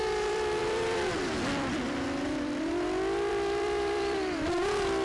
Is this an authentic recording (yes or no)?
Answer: no